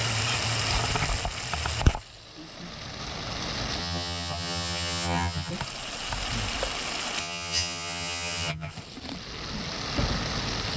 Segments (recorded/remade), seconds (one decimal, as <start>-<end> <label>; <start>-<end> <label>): 0.0-3.8 recorded; 3.8-5.5 remade; 5.5-7.2 recorded; 7.2-8.7 remade; 8.7-10.8 recorded